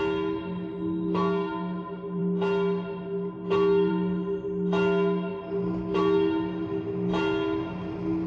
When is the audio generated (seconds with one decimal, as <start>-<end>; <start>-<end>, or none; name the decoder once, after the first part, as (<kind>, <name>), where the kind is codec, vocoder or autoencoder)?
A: none